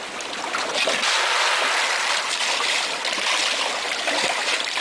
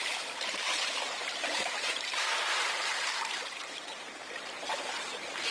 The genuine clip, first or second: first